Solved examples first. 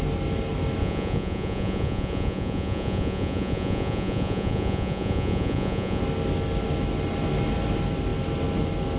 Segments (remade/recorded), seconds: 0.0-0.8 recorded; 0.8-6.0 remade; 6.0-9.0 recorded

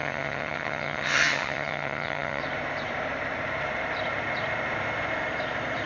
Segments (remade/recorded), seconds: 0.0-2.4 remade; 2.4-5.9 recorded